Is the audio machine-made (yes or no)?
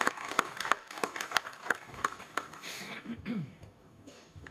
yes